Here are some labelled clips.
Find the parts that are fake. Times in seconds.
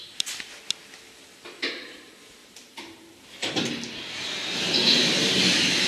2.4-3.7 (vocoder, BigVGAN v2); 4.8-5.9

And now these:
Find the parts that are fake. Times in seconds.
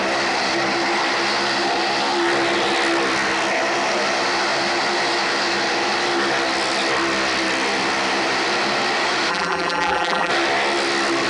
9.3-10.3 (vocoder, BigVGAN v2)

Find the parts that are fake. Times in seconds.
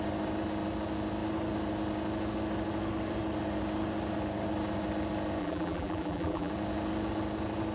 5.4-6.5 (vocoder, BigVGAN v2)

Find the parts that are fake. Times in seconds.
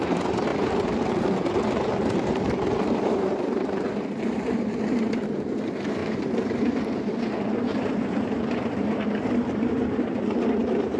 0.0-11.0 (vocoder, BigVGAN v2)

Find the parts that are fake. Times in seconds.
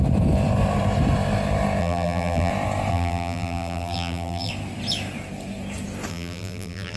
1.8-2.5 (vocoder, BigVGAN v2); 2.9-4.5; 6.1-7.0